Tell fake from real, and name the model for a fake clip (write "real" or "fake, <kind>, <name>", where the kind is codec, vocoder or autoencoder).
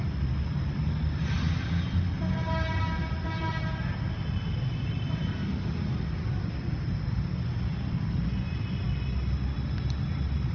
real